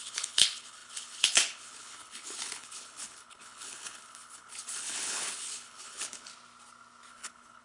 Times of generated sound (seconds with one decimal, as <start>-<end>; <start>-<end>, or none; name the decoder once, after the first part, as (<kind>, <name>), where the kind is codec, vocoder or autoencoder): 0.0-6.3 (codec, HILCodec); 7.1-7.6